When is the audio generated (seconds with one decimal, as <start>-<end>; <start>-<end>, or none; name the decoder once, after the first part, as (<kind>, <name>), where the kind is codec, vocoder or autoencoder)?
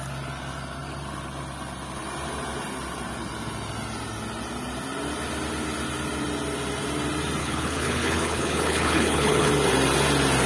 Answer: 7.4-9.5 (codec, HILCodec)